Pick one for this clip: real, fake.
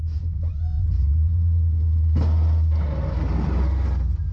real